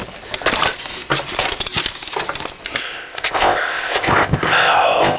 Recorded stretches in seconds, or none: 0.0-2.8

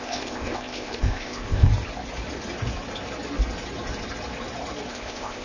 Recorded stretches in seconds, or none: 1.7-4.9